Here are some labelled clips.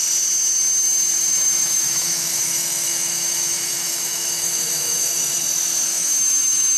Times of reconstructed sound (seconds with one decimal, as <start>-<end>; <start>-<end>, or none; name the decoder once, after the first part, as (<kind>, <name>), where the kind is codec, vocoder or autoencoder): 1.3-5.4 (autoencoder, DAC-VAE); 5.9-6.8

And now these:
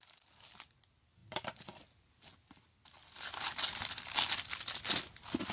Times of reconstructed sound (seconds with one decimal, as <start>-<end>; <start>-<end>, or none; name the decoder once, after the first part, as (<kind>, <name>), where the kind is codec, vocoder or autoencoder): none

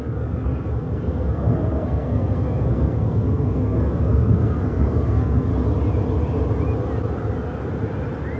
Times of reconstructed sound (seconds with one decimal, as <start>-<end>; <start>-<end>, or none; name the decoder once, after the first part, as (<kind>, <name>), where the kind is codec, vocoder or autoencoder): 0.0-5.5 (codec, SNAC)

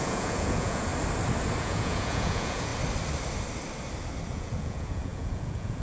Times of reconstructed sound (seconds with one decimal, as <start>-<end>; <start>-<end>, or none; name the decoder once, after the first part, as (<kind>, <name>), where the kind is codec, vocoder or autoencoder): 0.0-0.9 (vocoder, Vocos); 1.6-2.7; 4.3-5.8

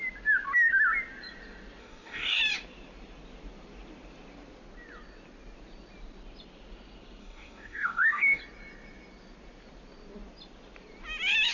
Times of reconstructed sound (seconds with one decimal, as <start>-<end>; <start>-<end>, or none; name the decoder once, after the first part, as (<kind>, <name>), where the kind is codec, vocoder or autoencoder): 1.8-2.4 (codec, DAC); 7.2-8.4

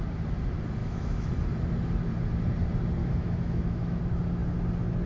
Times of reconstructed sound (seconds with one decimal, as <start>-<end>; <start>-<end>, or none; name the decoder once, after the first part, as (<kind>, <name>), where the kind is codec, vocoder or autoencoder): 0.8-1.3 (autoencoder, DAC-VAE); 3.0-4.0

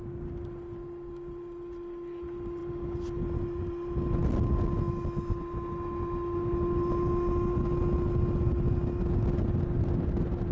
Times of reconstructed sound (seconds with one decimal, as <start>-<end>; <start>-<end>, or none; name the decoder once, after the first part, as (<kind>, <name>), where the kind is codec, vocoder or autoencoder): none